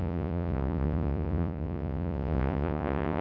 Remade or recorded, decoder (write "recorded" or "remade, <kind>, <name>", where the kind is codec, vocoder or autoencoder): remade, vocoder, Vocos